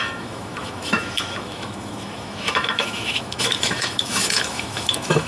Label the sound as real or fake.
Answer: fake